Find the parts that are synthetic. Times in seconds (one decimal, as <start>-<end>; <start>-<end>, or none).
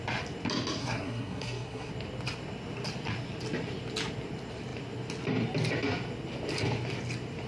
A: 0.8-1.9